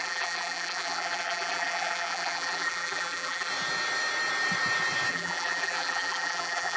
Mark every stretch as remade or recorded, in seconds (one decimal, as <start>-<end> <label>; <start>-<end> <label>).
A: 0.0-3.5 remade; 3.5-5.1 recorded; 5.1-6.8 remade